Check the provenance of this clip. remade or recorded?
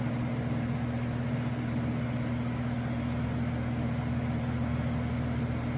recorded